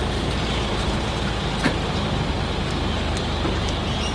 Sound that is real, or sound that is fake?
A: fake